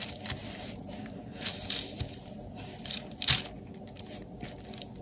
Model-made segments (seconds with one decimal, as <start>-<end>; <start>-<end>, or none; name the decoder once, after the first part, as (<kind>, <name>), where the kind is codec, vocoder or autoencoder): 0.4-3.4 (vocoder, BigVGAN v2)